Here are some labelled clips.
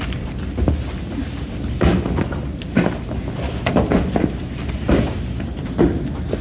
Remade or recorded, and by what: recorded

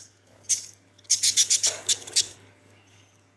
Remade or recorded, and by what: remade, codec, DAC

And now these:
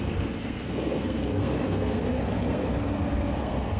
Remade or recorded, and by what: remade, codec, SNAC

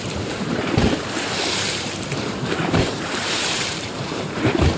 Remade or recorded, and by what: remade, vocoder, BigVGAN v2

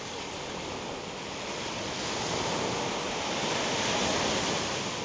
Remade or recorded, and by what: recorded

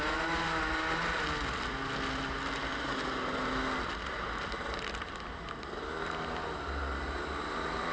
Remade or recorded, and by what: recorded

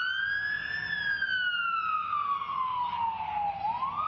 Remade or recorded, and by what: recorded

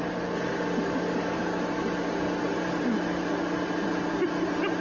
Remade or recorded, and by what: recorded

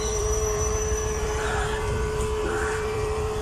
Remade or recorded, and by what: remade, vocoder, BigVGAN v2